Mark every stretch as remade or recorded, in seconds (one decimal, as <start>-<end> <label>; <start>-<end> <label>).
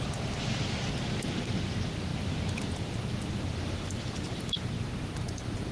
0.0-2.1 recorded; 2.1-5.7 remade